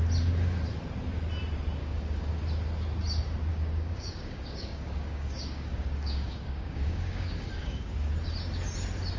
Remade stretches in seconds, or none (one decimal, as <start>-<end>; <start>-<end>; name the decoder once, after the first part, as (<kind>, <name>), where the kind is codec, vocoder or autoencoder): 1.8-2.4 (codec, DAC); 3.5-8.1